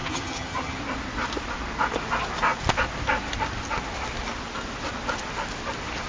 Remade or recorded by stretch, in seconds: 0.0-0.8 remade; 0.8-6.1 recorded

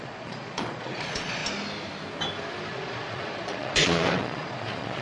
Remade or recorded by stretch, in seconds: 0.0-1.4 remade; 1.4-2.7 recorded; 2.7-5.0 remade

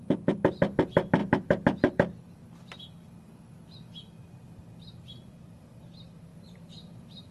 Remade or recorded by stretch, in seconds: 0.0-1.2 recorded; 1.2-2.8 remade; 2.8-6.3 recorded; 6.3-7.3 remade

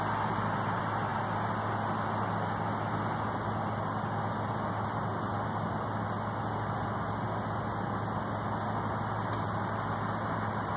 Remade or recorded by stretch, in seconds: 0.0-10.8 recorded

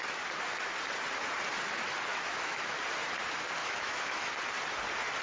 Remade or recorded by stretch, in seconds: 0.0-2.1 recorded; 2.1-2.8 remade; 2.8-3.6 recorded; 3.6-4.3 remade; 4.3-5.2 recorded

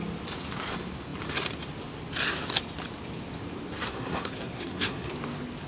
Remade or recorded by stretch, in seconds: 0.0-3.9 recorded; 3.9-5.1 remade; 5.1-5.7 recorded

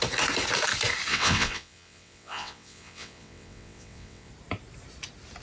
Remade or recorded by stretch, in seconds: 0.0-1.1 recorded; 1.1-4.3 remade; 4.3-5.4 recorded